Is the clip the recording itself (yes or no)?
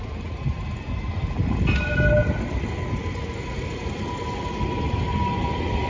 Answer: yes